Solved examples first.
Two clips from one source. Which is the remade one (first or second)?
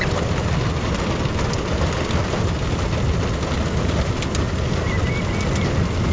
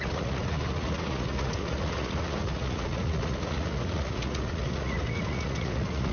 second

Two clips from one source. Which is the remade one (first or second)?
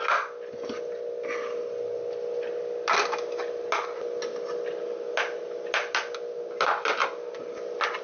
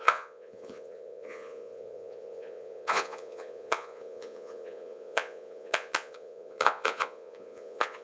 second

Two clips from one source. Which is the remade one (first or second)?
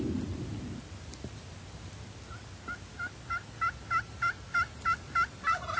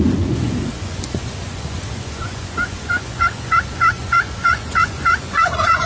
second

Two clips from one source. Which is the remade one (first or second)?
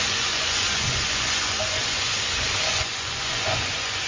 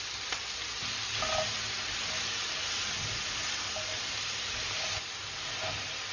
first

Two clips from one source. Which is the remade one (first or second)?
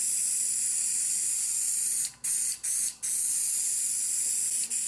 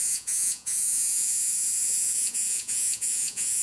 second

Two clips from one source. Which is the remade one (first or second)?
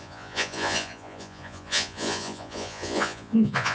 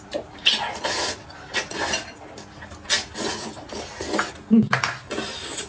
first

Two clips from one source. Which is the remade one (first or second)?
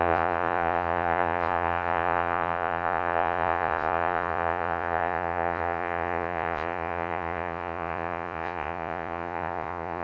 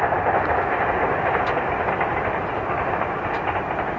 first